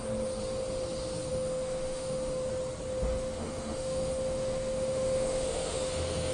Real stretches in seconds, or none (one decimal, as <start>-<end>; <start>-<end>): 0.0-1.3; 2.5-3.1